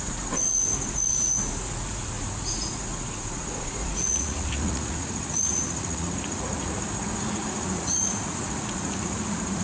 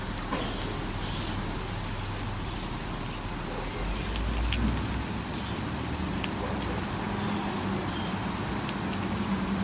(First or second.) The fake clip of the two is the first